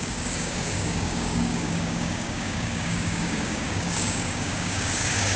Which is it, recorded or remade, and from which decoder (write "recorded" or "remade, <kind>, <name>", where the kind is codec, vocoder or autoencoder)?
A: remade, codec, DAC